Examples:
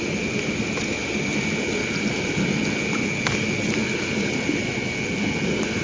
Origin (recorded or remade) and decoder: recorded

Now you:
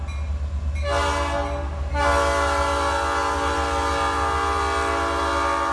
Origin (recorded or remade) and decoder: recorded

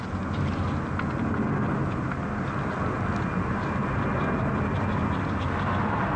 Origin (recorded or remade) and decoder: recorded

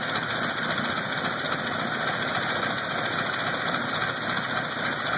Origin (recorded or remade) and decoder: recorded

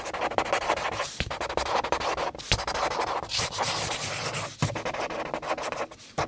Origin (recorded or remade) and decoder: recorded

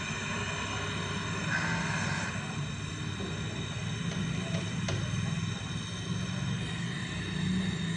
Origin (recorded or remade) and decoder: recorded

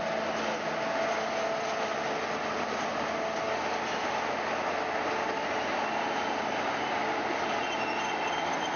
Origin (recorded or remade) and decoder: recorded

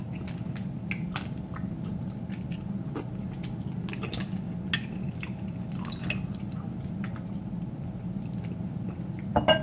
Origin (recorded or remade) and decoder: recorded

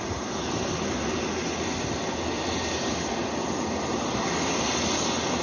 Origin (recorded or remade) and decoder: recorded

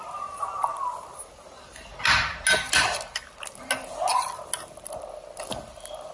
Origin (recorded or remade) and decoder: recorded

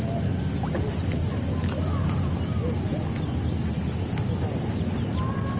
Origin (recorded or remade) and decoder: recorded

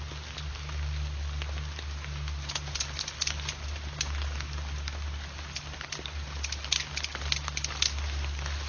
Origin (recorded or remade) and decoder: recorded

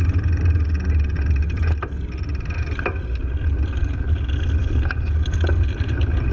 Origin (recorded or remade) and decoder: recorded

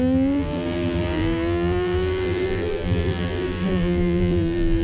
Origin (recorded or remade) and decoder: remade, vocoder, BigVGAN v2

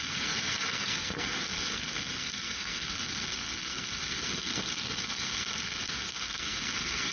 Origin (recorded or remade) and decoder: remade, codec, SNAC